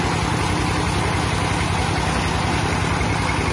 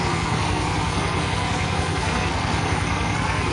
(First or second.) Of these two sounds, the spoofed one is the second